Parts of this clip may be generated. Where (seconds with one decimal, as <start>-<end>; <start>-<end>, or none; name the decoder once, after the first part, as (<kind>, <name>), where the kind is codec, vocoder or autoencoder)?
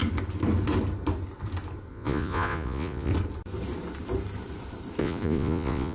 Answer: 1.9-3.1 (vocoder, Vocos); 5.0-5.9